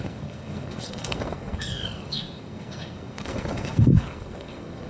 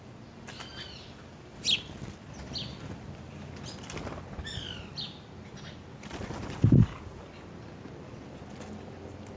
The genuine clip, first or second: second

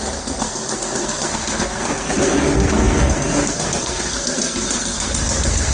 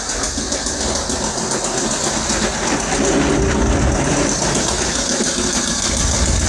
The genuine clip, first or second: second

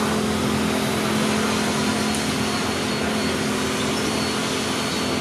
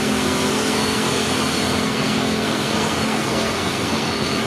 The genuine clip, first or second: first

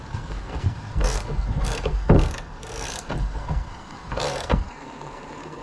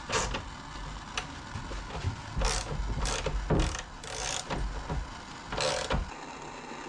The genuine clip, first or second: second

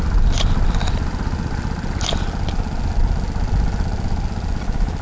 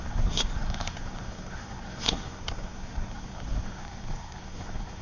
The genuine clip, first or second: first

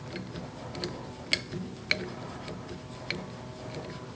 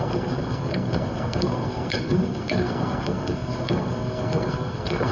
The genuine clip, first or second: first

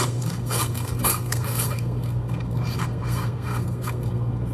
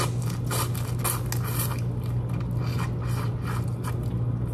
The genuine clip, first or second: second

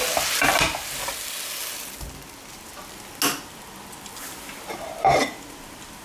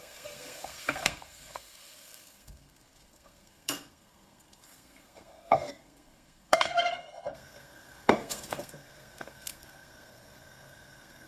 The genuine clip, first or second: first